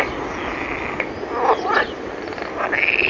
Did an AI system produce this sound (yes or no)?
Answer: no